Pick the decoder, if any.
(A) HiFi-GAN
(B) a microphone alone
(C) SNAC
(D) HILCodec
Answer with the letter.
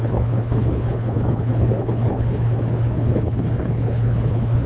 D